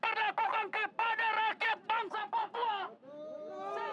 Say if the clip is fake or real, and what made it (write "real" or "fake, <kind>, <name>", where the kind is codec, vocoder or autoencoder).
real